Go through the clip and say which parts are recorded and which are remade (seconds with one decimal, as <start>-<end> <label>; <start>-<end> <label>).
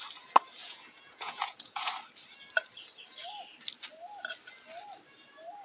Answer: 0.0-0.6 recorded; 0.6-1.9 remade; 1.9-5.6 recorded